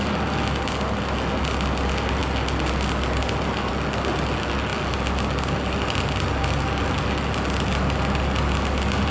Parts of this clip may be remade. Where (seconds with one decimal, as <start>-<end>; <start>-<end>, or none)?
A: none

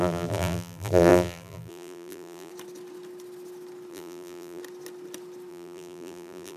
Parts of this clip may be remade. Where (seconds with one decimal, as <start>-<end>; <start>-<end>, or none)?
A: 0.0-2.5; 3.9-4.6; 5.5-6.6

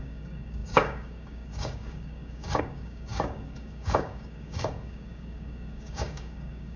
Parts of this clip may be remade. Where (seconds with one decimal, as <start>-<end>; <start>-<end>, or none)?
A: 0.0-6.8